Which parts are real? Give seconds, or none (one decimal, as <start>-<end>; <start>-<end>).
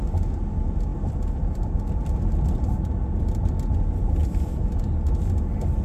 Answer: 0.0-0.9; 2.6-4.2; 4.8-5.8